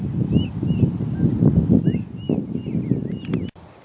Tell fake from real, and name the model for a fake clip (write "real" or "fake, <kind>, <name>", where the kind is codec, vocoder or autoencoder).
real